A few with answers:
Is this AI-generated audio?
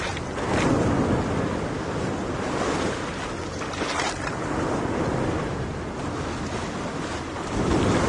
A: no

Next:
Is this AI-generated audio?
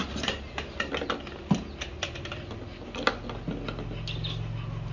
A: no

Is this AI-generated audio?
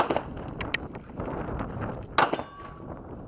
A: no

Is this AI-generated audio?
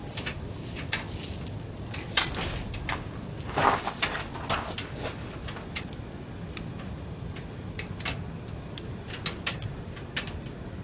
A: no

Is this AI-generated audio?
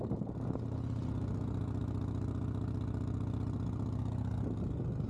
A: no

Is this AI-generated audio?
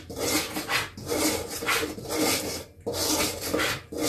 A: no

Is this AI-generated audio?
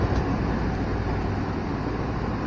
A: no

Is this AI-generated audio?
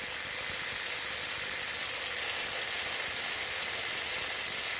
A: no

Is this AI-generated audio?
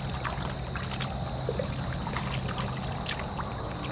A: no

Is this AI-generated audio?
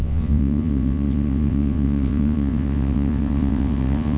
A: yes